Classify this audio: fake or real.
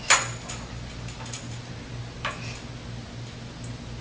real